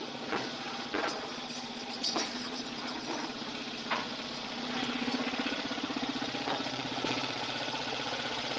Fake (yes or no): yes